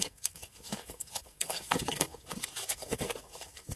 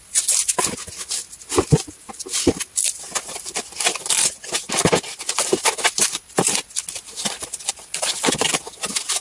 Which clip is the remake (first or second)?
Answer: first